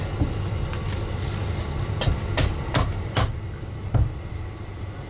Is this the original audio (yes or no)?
yes